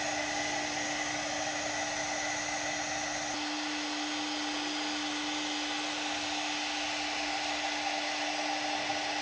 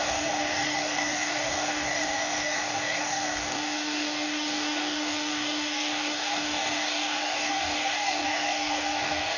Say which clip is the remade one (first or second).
second